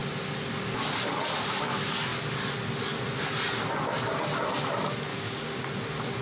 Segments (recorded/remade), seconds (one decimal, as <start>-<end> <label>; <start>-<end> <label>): 0.0-5.1 recorded; 5.1-5.6 remade; 5.6-6.2 recorded

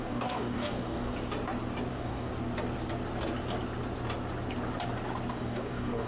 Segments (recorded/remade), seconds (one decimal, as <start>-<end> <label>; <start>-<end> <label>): 0.0-1.1 remade; 1.1-1.9 recorded; 1.9-2.3 remade; 2.3-5.3 recorded; 5.3-6.1 remade

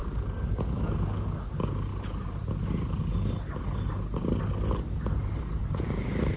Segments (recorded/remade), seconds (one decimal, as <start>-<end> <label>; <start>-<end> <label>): 0.0-1.9 remade; 1.9-5.7 recorded; 5.7-6.4 remade

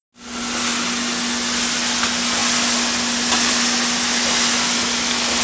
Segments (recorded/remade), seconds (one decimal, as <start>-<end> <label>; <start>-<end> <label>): 0.0-5.4 recorded

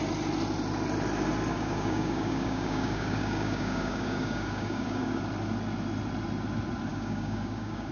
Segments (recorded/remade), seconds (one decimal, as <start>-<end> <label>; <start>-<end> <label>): 0.0-1.5 recorded; 1.5-5.2 remade; 5.2-6.9 recorded; 6.9-7.9 remade

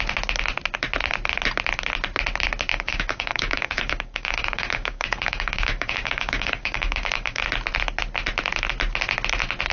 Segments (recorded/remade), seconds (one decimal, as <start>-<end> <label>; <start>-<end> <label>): 0.0-2.7 recorded; 2.7-7.4 remade; 7.4-9.7 recorded

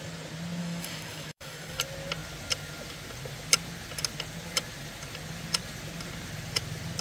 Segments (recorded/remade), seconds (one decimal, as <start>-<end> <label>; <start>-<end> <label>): 0.0-0.6 recorded; 0.6-1.8 remade; 1.8-7.0 recorded